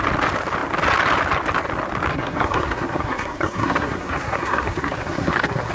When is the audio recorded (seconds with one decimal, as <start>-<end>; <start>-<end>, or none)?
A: 0.0-2.1